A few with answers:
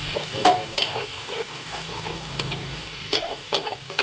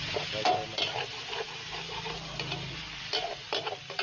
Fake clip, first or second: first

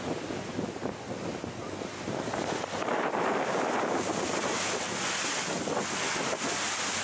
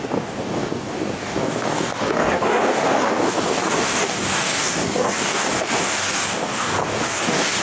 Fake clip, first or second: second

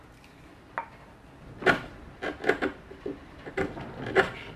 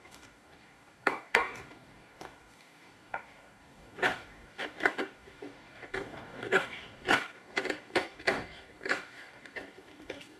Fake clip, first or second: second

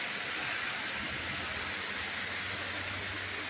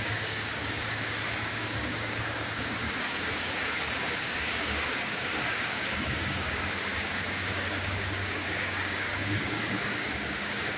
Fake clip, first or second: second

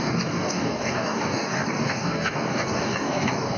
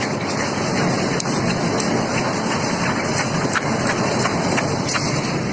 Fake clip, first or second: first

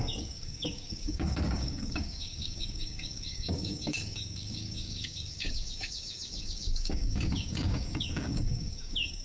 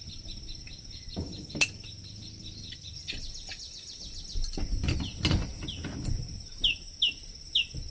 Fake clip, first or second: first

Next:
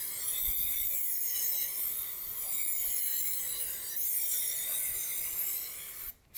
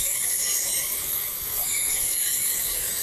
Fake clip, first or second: second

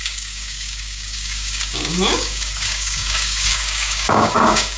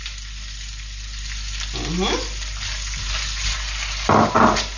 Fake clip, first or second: first